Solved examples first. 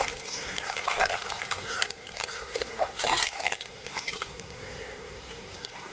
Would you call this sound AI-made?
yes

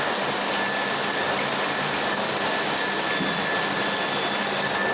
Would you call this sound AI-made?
no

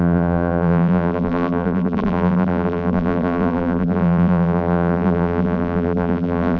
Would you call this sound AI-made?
yes